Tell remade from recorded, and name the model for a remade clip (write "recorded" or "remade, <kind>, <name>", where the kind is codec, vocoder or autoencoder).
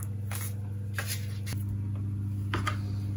recorded